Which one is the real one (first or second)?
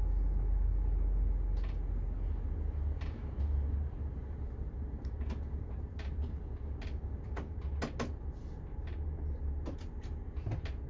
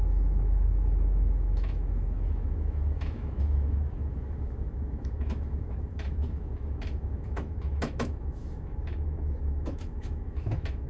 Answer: first